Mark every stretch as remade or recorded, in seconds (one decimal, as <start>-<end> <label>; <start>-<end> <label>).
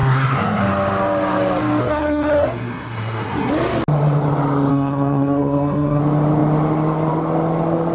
0.0-0.6 remade; 0.6-1.8 recorded; 1.8-3.5 remade; 3.5-4.7 recorded; 4.7-6.0 remade; 6.0-7.9 recorded